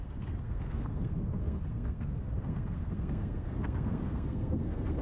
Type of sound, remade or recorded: remade